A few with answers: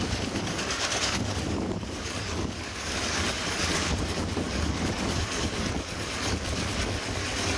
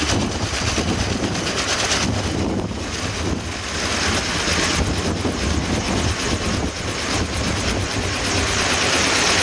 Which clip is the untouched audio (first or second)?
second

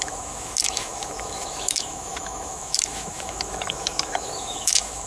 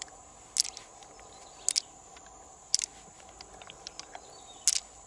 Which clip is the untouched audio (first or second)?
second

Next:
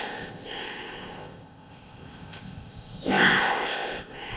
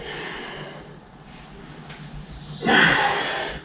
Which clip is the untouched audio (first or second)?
second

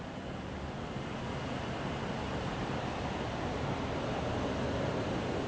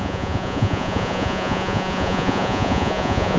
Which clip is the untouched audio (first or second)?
first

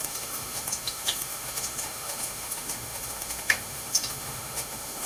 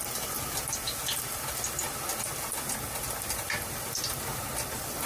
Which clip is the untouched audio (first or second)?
second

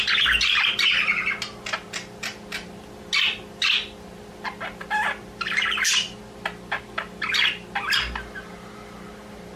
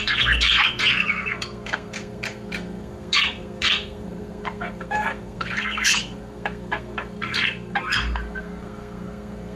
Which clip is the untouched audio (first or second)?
first